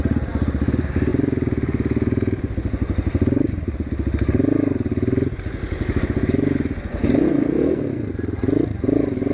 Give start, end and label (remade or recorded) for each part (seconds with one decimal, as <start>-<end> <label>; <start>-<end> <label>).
0.0-7.3 recorded; 7.3-8.1 remade; 8.1-9.3 recorded